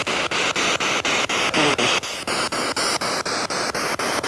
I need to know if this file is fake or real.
real